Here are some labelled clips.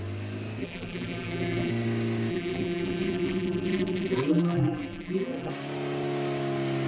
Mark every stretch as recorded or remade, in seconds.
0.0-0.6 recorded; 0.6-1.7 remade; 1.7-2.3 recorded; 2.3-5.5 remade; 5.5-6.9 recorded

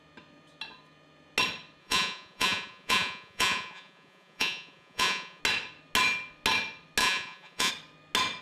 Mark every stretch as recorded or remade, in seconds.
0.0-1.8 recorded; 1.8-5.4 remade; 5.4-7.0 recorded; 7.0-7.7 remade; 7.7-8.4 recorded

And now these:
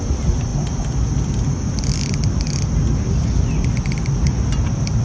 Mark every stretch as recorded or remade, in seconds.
0.0-5.0 recorded

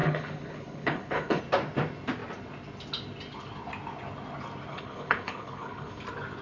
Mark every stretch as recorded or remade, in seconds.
0.0-1.4 remade; 1.4-4.7 recorded; 4.7-6.0 remade; 6.0-6.4 recorded

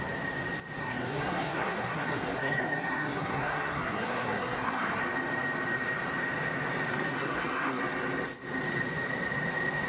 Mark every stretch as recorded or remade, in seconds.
0.0-0.8 recorded; 0.8-5.0 remade; 5.0-6.9 recorded; 6.9-7.8 remade; 7.8-9.9 recorded

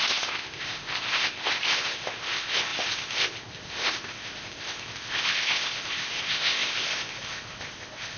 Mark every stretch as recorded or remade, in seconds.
0.0-8.2 remade

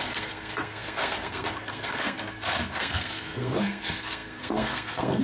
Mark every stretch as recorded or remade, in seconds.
0.0-5.2 remade

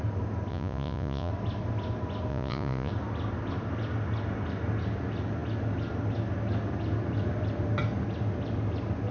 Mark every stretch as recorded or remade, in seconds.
0.0-0.5 recorded; 0.5-1.3 remade; 1.3-2.3 recorded; 2.3-2.9 remade; 2.9-9.1 recorded